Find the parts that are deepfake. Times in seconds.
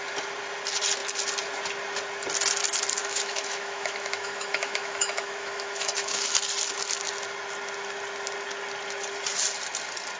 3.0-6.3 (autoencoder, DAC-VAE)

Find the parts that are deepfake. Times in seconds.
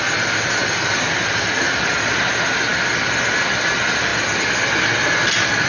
none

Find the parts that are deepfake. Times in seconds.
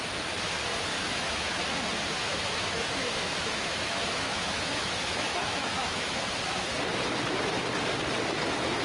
0.9-1.6 (autoencoder, DAC-VAE); 2.2-6.2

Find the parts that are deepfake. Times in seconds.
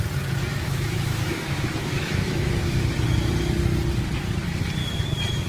0.5-2.9 (autoencoder, DAC-VAE); 4.8-5.5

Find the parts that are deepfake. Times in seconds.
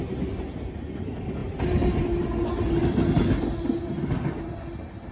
none